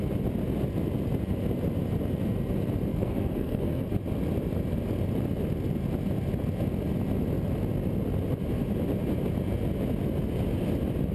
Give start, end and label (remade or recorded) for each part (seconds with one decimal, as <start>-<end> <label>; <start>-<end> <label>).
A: 0.0-2.9 recorded; 2.9-3.9 remade; 3.9-11.1 recorded